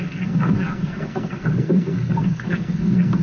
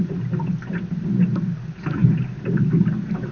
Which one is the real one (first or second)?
second